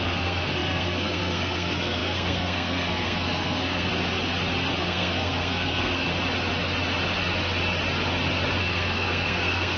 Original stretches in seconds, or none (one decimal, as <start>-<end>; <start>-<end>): 3.9-4.8; 6.1-8.6